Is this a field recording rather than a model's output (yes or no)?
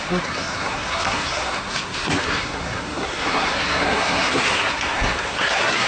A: no